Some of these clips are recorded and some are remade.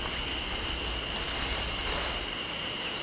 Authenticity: recorded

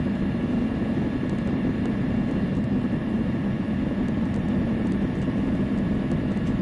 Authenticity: recorded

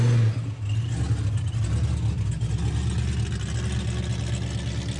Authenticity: recorded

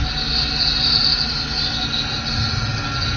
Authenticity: recorded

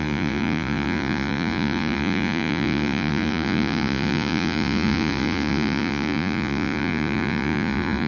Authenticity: remade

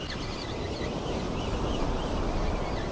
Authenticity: recorded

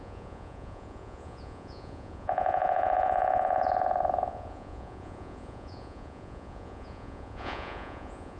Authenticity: remade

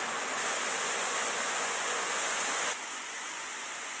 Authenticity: remade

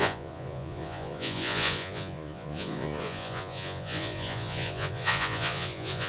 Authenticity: remade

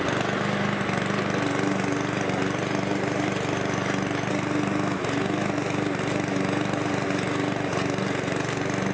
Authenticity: recorded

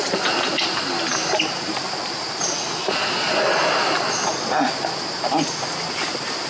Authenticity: recorded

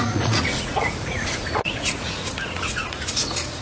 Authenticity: remade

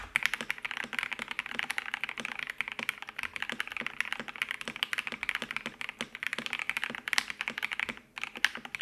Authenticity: recorded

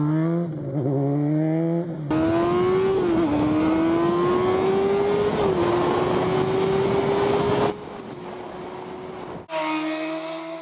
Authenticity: recorded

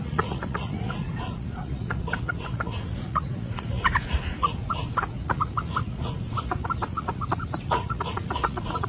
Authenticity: remade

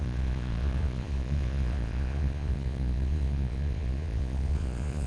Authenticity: remade